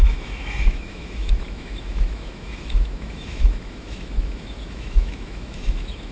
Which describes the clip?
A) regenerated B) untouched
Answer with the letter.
A